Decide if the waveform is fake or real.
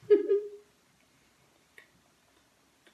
fake